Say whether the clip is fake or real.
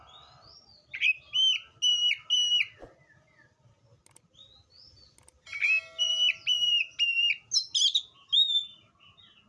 real